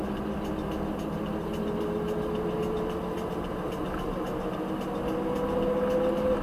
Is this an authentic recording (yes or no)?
yes